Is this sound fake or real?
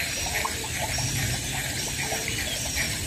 real